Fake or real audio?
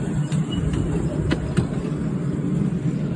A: real